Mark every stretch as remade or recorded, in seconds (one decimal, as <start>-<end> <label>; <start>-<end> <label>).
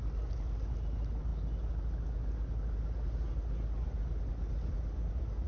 0.0-5.5 recorded